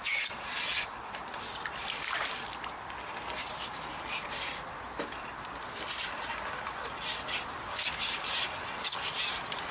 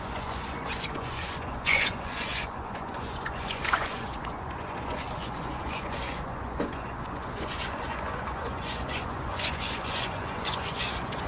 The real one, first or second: first